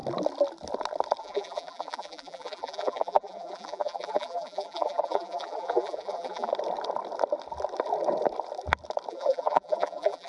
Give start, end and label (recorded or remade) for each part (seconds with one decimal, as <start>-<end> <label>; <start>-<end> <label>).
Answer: 0.0-1.2 recorded; 1.2-6.5 remade; 6.5-9.1 recorded; 9.1-10.3 remade